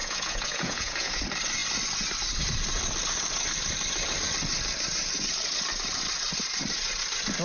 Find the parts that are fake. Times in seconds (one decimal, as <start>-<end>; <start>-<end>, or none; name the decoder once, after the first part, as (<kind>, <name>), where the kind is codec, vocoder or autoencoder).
0.0-1.2 (vocoder, Vocos)